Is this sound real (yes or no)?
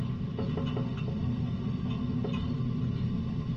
yes